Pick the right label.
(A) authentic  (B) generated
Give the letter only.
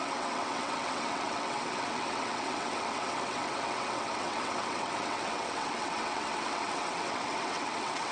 B